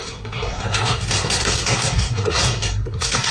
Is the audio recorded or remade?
remade